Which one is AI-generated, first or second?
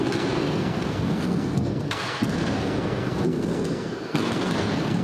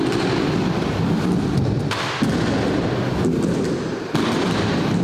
first